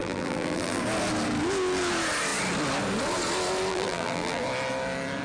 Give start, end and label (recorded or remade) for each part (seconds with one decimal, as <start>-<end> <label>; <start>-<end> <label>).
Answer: 0.0-0.8 remade; 0.8-3.7 recorded; 3.7-4.4 remade; 4.4-5.2 recorded